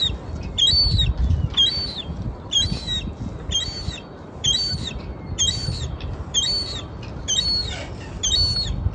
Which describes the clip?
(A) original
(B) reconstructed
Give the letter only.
A